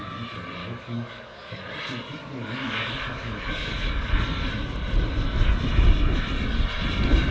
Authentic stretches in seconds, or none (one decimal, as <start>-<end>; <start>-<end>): 0.0-0.6; 1.7-2.2; 4.1-7.3